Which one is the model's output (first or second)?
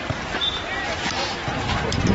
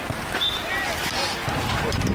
first